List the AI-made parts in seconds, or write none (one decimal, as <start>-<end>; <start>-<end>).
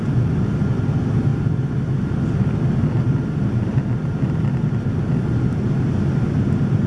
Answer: none